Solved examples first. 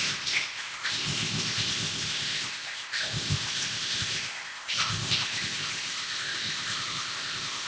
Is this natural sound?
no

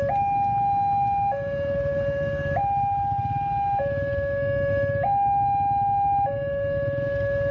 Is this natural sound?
yes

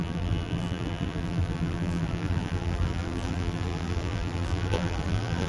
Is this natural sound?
no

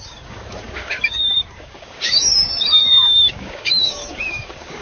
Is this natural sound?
no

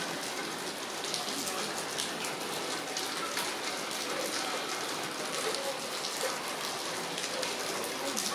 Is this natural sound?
yes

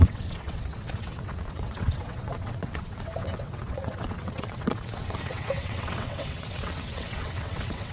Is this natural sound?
no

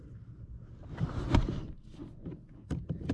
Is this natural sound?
yes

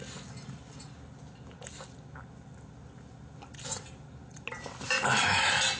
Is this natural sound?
yes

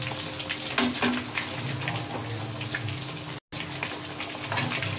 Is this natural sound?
yes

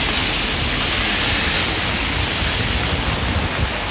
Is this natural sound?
yes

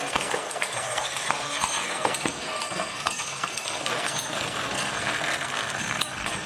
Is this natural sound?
no